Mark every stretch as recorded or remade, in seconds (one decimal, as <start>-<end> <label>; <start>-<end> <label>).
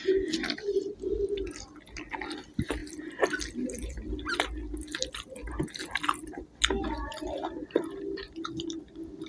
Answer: 0.0-2.8 recorded; 2.8-4.3 remade; 4.3-7.1 recorded; 7.1-9.3 remade